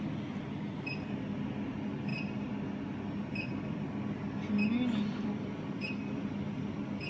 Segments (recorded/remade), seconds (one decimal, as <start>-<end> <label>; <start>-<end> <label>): 0.0-7.1 recorded